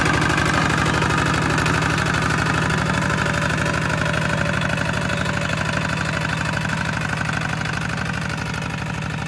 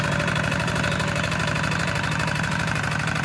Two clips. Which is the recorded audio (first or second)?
first